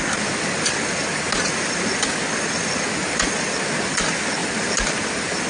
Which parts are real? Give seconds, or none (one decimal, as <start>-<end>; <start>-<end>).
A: 0.0-5.5